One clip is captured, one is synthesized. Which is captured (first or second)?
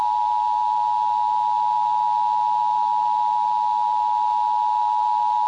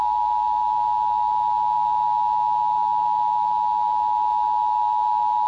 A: first